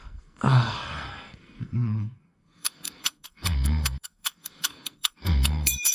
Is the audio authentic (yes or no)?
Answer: no